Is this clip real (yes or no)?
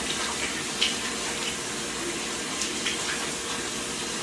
yes